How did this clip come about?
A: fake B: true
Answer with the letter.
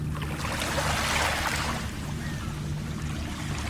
B